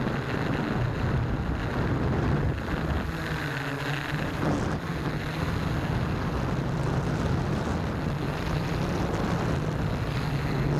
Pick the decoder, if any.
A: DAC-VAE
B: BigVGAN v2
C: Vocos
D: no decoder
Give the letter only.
D